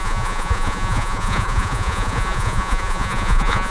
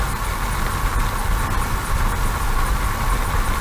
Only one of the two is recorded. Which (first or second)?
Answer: second